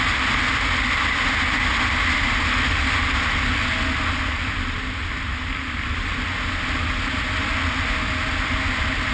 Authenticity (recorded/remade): recorded